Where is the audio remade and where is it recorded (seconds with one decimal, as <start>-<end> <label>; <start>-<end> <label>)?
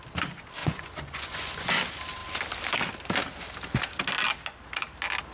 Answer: 0.0-0.6 recorded; 0.6-1.8 remade; 1.8-5.3 recorded